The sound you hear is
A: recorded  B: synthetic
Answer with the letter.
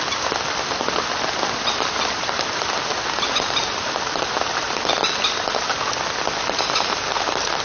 A